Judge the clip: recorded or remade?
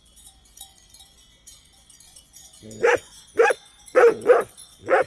remade